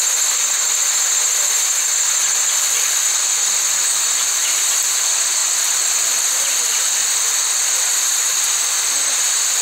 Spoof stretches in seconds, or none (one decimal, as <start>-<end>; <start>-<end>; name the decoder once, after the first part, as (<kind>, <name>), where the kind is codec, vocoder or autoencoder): none